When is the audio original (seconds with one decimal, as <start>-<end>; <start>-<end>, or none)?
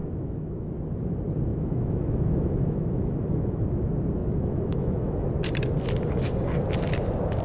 0.7-1.5; 3.6-4.2; 5.3-7.4